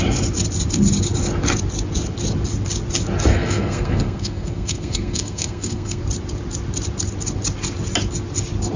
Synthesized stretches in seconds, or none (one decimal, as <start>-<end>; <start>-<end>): 3.3-6.0

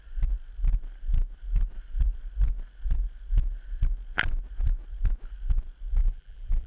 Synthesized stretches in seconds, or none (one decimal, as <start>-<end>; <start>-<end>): 6.0-6.7

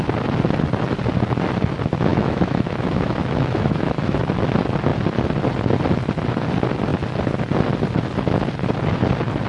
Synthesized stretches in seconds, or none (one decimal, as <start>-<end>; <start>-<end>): 2.1-4.2

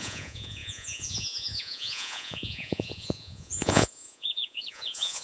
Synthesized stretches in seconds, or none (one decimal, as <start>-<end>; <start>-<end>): 0.0-5.2

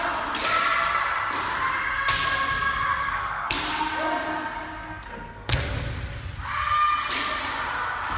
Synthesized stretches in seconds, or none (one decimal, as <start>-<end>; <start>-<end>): 3.0-3.6; 4.8-5.6